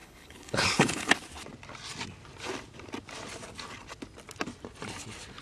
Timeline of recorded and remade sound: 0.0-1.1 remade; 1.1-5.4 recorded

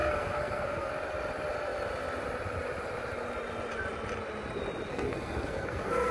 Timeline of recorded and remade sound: 0.0-0.9 remade; 0.9-4.9 recorded; 4.9-6.1 remade

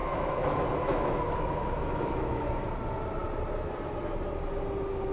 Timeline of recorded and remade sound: 0.0-2.7 remade; 2.7-5.1 recorded

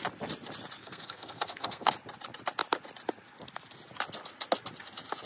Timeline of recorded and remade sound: 0.0-0.8 recorded; 0.8-1.9 remade; 1.9-5.3 recorded

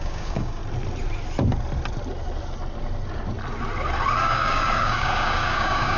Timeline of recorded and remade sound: 0.0-0.6 remade; 0.6-4.2 recorded; 4.2-6.0 remade

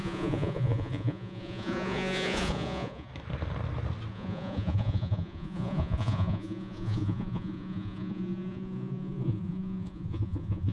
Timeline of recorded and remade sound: 0.0-3.1 remade; 3.1-4.1 recorded; 4.1-10.7 remade